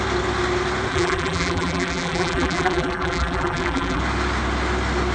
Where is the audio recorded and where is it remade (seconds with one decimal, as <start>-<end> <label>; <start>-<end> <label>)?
0.0-0.9 recorded; 0.9-4.0 remade; 4.0-5.1 recorded